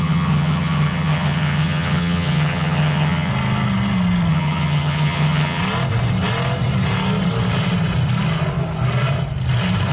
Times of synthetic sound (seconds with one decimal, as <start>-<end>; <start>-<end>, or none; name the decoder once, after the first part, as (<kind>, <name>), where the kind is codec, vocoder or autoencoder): 0.0-3.3 (vocoder, HiFi-GAN); 4.3-5.6